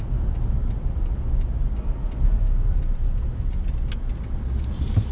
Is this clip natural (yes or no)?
yes